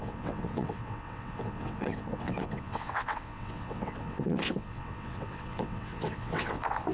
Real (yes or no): no